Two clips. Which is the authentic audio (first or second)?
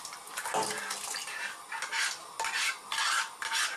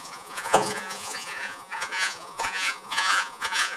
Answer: first